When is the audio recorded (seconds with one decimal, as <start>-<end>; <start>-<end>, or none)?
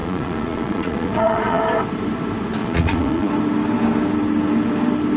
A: 1.6-2.6; 3.3-5.2